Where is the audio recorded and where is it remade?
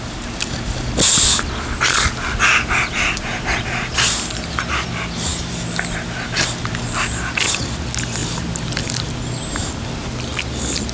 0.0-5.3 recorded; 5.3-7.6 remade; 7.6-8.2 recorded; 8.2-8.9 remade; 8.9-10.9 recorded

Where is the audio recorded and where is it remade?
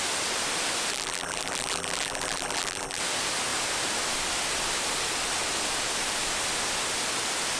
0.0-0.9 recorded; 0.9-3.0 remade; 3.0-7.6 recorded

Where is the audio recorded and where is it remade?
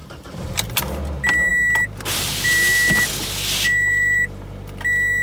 0.0-0.9 remade; 0.9-5.2 recorded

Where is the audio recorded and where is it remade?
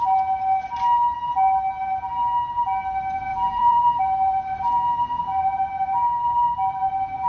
0.0-3.3 recorded; 3.3-4.0 remade; 4.0-7.3 recorded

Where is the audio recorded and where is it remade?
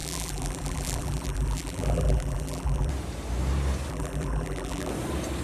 0.0-2.9 remade; 2.9-3.9 recorded; 3.9-4.9 remade; 4.9-5.4 recorded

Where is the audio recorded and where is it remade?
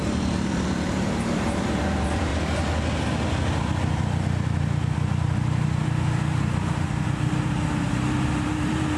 0.0-2.3 remade; 2.3-6.4 recorded; 6.4-9.0 remade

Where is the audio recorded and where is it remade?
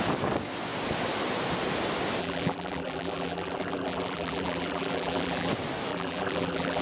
0.0-2.2 recorded; 2.2-5.5 remade; 5.5-5.9 recorded; 5.9-6.8 remade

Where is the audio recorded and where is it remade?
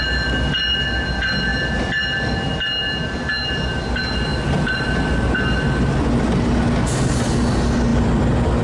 0.0-4.3 recorded; 4.3-4.9 remade; 4.9-7.9 recorded; 7.9-8.6 remade